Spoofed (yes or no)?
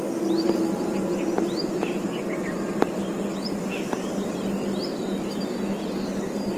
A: no